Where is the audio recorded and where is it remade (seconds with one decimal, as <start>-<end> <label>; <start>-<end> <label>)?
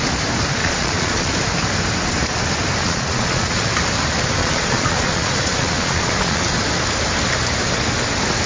0.0-0.6 recorded; 0.6-1.3 remade; 1.3-2.8 recorded; 2.8-3.7 remade; 3.7-4.4 recorded; 4.4-6.4 remade; 6.4-8.5 recorded